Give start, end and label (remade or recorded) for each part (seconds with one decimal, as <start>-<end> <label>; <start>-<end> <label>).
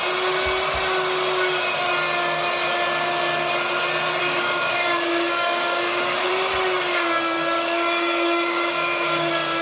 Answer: 0.0-4.2 recorded; 4.2-6.3 remade; 6.3-6.9 recorded; 6.9-9.6 remade